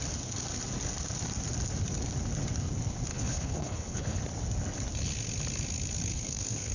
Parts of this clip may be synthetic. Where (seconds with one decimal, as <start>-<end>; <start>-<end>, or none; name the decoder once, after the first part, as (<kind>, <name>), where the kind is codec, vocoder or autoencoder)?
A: 3.1-4.2 (codec, HILCodec); 6.1-6.7